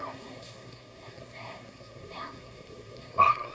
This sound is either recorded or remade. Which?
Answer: remade